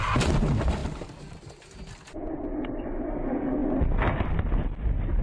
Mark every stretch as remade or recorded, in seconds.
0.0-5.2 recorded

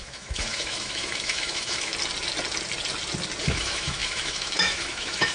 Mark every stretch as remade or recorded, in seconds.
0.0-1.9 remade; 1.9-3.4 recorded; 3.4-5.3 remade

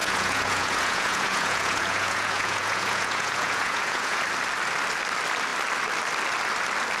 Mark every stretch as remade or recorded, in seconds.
0.0-4.2 remade; 4.2-7.0 recorded

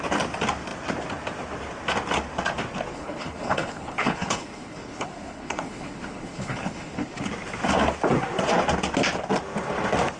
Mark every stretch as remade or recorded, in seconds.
0.0-2.9 recorded; 2.9-7.3 remade; 7.3-10.2 recorded

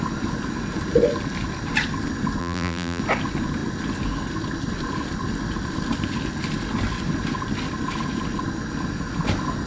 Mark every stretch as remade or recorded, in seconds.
0.0-2.4 recorded; 2.4-3.0 remade; 3.0-9.7 recorded